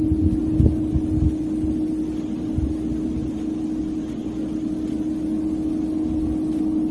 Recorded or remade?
recorded